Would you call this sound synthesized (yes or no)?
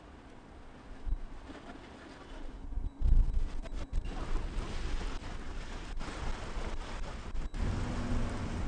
no